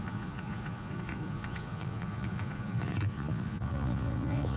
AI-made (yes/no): yes